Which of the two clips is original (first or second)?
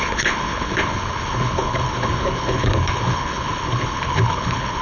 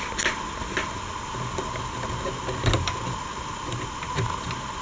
second